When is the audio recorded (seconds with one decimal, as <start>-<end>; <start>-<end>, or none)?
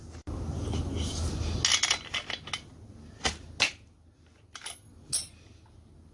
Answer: 0.0-6.1